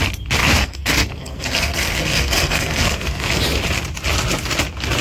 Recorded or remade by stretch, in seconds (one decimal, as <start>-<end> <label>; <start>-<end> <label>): 0.0-0.4 recorded; 0.4-3.4 remade; 3.4-5.0 recorded